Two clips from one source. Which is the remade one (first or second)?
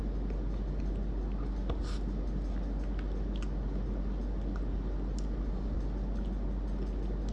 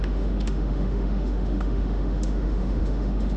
second